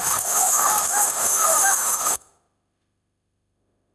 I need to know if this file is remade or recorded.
remade